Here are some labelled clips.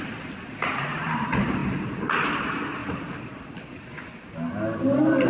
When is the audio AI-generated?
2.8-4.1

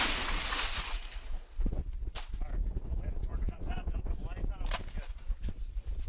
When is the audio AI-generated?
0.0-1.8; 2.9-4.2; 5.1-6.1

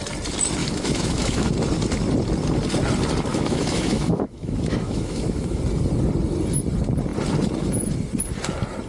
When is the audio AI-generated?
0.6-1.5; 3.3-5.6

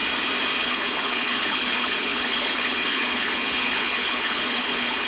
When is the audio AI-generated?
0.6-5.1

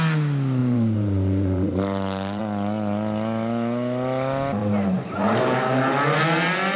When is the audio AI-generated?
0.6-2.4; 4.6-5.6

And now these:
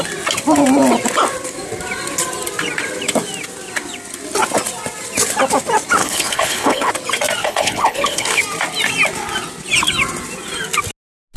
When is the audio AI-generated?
6.0-6.9; 7.4-8.4